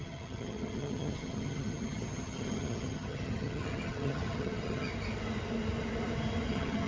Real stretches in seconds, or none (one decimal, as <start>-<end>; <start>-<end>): 4.9-6.5